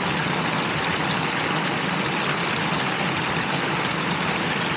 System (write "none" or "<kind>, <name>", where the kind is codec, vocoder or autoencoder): none